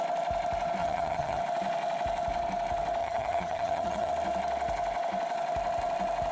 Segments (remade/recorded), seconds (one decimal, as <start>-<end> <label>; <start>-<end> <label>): 0.0-0.8 recorded; 0.8-1.4 remade; 1.4-3.0 recorded; 3.0-4.1 remade; 4.1-6.3 recorded